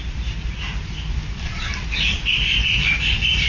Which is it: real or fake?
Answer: fake